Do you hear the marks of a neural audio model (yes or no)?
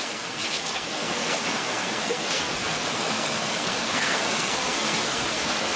yes